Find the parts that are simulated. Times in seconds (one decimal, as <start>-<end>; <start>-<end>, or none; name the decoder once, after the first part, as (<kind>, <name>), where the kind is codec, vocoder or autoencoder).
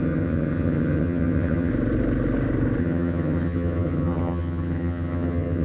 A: 0.0-1.7 (vocoder, HiFi-GAN); 2.8-5.6